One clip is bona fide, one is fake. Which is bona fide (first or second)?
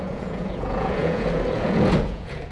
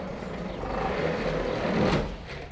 second